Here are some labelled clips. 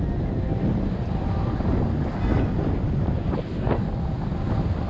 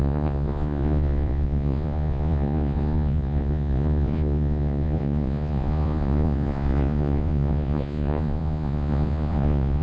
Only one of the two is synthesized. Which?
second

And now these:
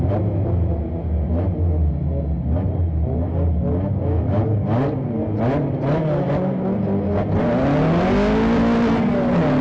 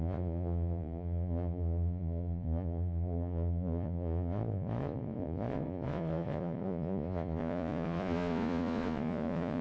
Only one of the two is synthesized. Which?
second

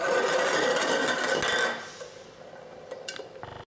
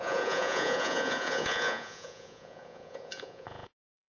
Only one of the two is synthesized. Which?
second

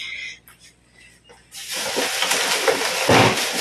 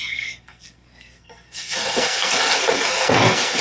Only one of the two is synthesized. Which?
second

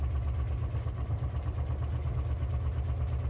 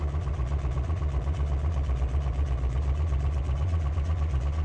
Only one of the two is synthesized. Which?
second